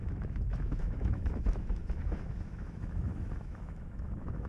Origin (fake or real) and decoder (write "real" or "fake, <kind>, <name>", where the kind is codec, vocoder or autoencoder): fake, autoencoder, DAC-VAE